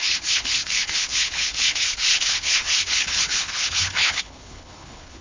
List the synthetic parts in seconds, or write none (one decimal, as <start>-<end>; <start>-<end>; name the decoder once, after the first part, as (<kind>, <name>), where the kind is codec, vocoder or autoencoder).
0.0-5.2 (codec, HILCodec)